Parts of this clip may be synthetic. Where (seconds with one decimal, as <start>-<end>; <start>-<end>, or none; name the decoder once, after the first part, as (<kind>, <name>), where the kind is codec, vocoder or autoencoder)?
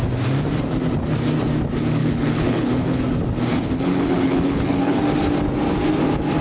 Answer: 2.0-3.0 (codec, HILCodec); 3.5-5.0